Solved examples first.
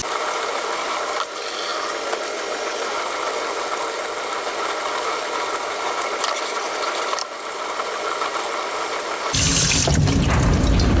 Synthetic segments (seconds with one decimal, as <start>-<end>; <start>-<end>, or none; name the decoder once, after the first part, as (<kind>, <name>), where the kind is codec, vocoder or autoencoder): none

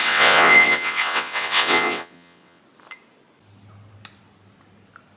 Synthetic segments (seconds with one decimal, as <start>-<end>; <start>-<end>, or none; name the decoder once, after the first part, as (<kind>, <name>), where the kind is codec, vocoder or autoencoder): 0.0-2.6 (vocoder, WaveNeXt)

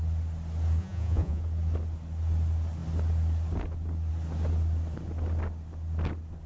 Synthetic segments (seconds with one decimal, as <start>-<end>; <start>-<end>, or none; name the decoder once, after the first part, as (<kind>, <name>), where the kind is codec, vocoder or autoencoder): 0.8-1.4 (vocoder, Vocos)

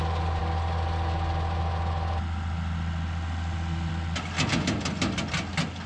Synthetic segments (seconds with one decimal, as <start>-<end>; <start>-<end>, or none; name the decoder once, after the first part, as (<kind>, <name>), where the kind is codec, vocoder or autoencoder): none

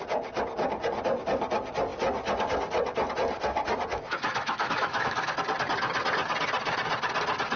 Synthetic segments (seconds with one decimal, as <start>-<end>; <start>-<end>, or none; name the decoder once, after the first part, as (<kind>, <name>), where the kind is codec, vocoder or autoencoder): 3.9-5.3 (autoencoder, DAC-VAE)